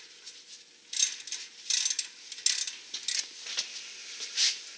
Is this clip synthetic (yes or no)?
no